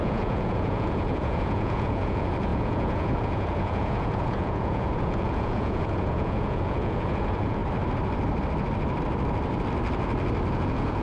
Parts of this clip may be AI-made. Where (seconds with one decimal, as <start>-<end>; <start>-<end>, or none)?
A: 0.0-7.6; 10.5-11.0